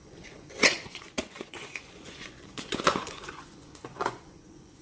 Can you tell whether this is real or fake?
fake